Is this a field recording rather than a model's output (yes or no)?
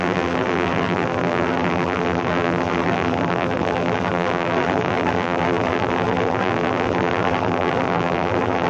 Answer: no